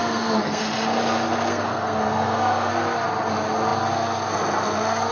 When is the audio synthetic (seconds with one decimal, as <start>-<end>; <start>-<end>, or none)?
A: 0.0-0.6; 1.5-2.7